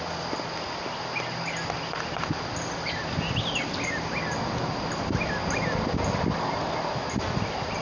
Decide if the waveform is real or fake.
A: real